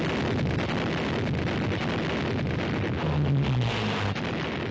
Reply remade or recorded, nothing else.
recorded